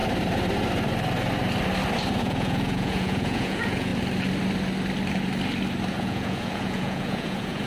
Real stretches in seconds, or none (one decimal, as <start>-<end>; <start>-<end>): 0.0-2.2; 3.9-5.9